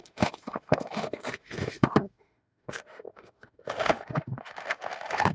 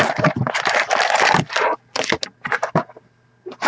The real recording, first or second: second